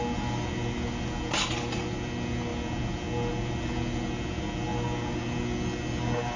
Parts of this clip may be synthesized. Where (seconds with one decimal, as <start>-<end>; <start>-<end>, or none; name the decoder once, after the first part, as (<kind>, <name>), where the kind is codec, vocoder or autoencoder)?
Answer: none